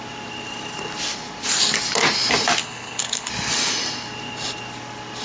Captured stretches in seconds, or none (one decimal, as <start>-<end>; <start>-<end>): 0.0-2.6; 3.3-5.2